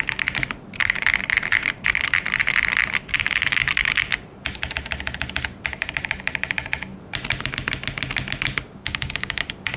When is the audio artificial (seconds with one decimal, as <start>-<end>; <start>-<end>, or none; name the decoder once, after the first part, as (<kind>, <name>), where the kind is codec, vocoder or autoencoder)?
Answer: 8.8-9.4 (codec, DAC)